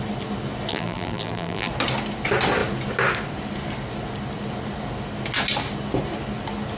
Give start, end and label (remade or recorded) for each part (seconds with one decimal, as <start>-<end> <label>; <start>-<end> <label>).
0.0-0.7 recorded; 0.7-1.7 remade; 1.7-6.8 recorded